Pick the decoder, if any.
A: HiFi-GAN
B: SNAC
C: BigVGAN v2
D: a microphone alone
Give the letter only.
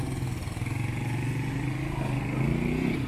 D